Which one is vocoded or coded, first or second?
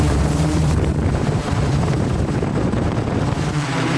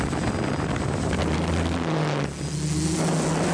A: first